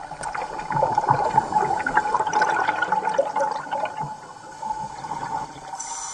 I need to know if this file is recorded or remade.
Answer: recorded